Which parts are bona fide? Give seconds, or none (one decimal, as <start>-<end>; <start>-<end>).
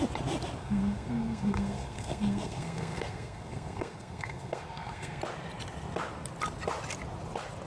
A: 0.0-0.6; 5.2-7.7